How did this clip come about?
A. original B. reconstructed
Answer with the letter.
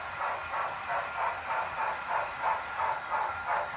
A